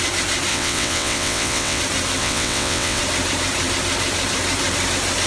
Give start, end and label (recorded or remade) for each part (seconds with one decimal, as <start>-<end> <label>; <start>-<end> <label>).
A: 0.0-0.5 recorded; 0.5-1.8 remade; 1.8-2.2 recorded; 2.2-3.0 remade; 3.0-5.3 recorded

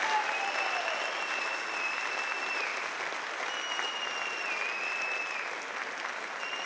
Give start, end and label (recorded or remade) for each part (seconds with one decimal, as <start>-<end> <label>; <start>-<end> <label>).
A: 0.0-6.7 recorded

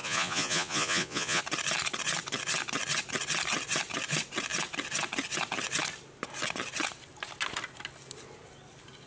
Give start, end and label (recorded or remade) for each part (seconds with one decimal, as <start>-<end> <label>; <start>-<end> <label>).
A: 0.0-1.4 remade; 1.4-9.1 recorded

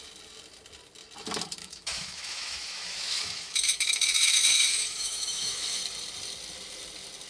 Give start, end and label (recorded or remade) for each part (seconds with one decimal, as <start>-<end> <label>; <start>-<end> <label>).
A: 0.0-1.6 recorded; 1.6-5.8 remade; 5.8-7.3 recorded

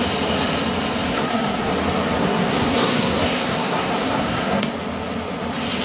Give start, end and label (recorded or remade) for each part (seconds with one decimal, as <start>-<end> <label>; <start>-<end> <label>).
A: 0.0-1.1 recorded; 1.1-1.7 remade; 1.7-2.2 recorded; 2.2-4.7 remade; 4.7-5.8 recorded

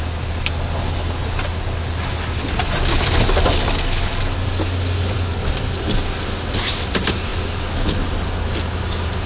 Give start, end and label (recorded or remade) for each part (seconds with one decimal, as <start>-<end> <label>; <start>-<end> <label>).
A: 0.0-9.3 recorded

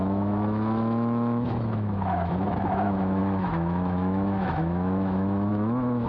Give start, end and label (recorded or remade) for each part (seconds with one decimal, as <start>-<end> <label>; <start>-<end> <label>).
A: 0.0-6.1 remade